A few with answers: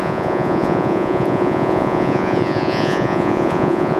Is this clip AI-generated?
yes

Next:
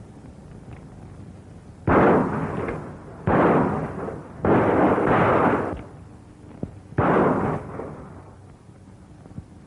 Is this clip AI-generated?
no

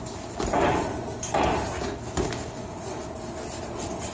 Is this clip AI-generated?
no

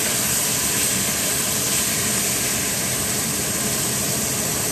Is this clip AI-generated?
no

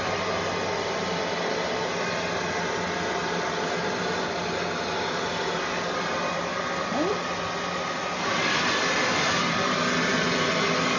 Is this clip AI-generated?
no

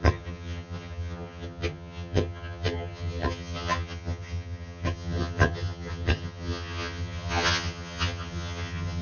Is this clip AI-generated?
yes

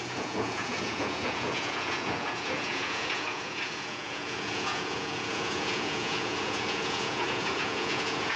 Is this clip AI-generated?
yes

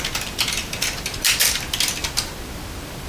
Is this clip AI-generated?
no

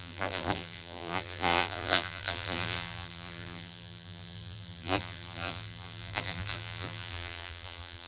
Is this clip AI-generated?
yes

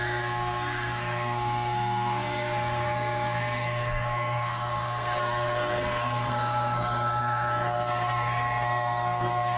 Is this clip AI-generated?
yes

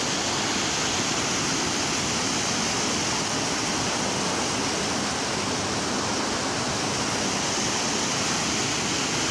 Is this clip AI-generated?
no